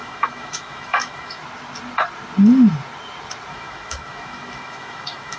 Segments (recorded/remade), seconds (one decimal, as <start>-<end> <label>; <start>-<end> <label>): 0.0-1.4 remade; 1.4-3.5 recorded; 3.5-5.4 remade